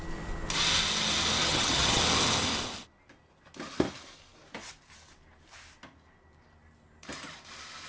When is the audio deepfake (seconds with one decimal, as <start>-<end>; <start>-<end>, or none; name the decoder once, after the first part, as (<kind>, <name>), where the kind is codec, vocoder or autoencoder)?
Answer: 1.4-2.0 (vocoder, HiFi-GAN)